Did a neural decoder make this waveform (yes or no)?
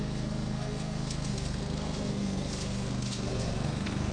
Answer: yes